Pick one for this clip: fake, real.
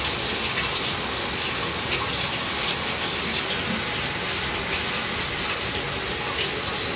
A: real